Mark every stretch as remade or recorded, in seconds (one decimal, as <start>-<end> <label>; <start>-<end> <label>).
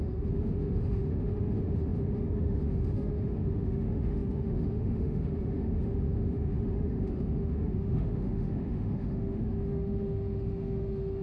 0.0-11.2 remade